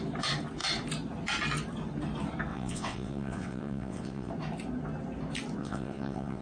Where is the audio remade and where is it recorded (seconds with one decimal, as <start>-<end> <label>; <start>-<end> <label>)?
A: 0.0-2.5 recorded; 2.5-4.3 remade; 4.3-5.6 recorded; 5.6-6.4 remade